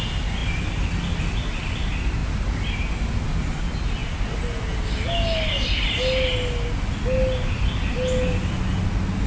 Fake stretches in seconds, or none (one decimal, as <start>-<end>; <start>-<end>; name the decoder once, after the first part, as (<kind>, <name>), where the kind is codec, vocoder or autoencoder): none